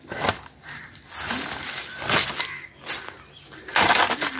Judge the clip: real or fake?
real